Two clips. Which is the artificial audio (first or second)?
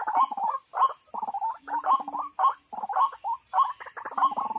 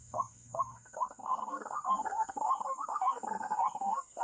second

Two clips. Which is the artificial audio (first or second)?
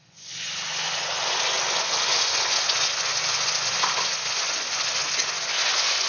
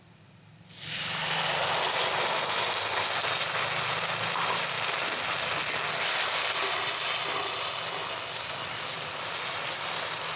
first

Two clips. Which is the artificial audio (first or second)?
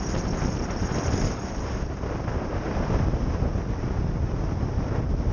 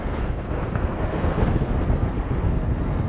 second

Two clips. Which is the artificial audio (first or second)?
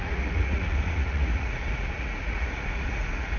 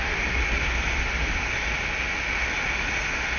first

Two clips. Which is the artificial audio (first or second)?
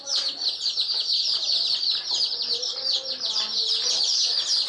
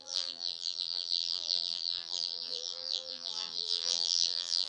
second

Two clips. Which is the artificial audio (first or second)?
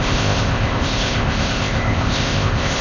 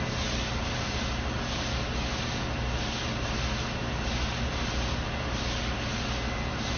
first